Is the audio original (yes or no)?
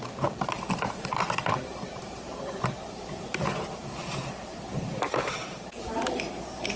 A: no